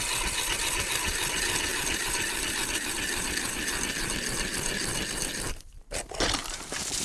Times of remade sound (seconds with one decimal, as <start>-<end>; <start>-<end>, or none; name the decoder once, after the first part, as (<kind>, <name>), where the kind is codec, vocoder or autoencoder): none

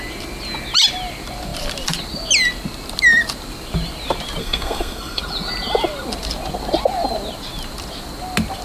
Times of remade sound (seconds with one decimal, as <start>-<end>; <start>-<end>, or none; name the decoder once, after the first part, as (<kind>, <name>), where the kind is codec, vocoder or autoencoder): 4.4-5.2 (codec, SNAC)

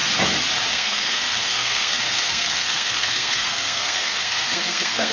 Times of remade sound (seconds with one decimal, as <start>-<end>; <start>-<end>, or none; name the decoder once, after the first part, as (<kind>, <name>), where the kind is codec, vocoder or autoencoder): 0.7-5.1 (codec, SNAC)

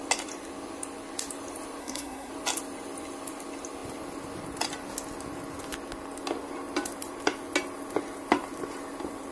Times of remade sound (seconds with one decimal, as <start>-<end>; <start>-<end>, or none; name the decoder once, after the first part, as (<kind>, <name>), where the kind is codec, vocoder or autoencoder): 1.8-2.3 (codec, SNAC)

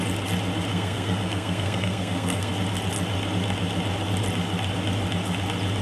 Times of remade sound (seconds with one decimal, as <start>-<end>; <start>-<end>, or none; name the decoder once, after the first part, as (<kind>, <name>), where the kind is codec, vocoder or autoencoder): 0.7-2.5 (codec, SNAC)